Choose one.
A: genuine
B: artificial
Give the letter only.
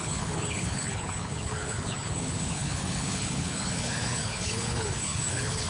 B